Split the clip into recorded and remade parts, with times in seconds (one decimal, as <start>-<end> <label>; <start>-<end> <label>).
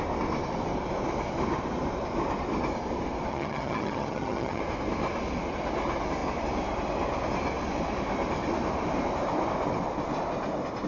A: 0.0-3.3 recorded; 3.3-4.6 remade; 4.6-10.9 recorded